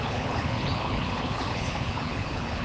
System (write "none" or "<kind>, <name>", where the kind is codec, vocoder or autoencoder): codec, HILCodec